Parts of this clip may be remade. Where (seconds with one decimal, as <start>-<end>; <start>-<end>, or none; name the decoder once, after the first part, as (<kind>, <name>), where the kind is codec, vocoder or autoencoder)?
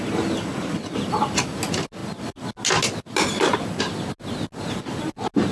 none